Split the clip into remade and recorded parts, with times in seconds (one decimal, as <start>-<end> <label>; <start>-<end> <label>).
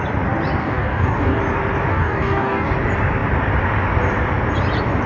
0.0-0.6 recorded; 0.6-1.4 remade; 1.4-1.9 recorded; 1.9-2.7 remade; 2.7-5.1 recorded